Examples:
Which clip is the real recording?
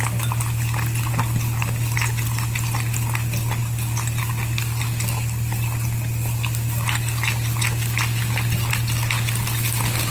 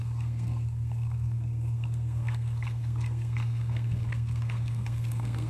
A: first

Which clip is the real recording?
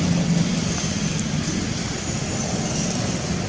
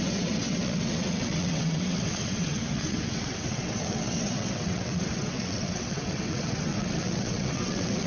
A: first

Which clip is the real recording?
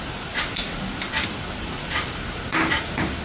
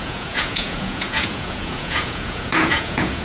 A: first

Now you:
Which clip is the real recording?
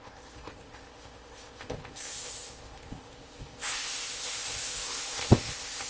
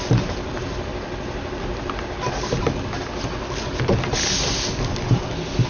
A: second